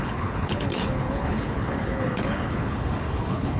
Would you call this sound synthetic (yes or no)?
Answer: yes